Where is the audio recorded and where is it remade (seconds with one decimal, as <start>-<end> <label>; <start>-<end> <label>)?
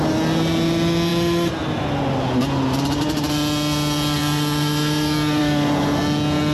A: 0.0-6.5 recorded